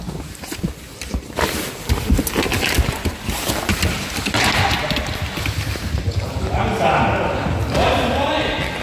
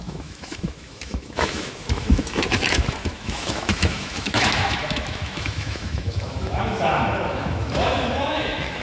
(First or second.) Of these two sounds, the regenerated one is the second